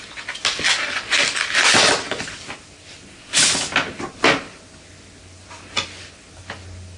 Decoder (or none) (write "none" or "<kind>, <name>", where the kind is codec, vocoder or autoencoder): none